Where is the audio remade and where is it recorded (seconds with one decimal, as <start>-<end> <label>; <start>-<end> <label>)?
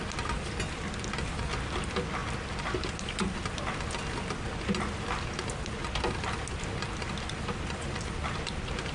0.0-8.9 recorded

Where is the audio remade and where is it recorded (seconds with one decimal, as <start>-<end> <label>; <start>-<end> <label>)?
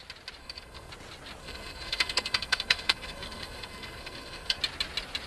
0.0-0.4 recorded; 0.4-0.9 remade; 0.9-1.4 recorded; 1.4-4.6 remade; 4.6-5.3 recorded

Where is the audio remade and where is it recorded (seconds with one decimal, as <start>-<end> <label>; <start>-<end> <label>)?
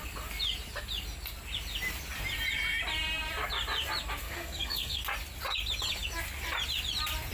0.0-4.2 recorded; 4.2-5.0 remade; 5.0-7.3 recorded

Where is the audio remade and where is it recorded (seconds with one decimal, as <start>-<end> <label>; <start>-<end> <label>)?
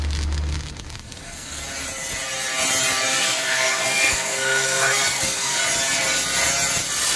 0.0-1.0 recorded; 1.0-1.6 remade; 1.6-3.1 recorded; 3.1-5.6 remade; 5.6-7.2 recorded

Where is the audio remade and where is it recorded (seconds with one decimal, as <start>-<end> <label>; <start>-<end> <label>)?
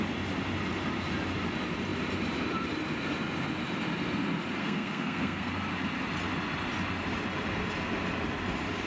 0.0-4.6 recorded; 4.6-5.5 remade; 5.5-8.9 recorded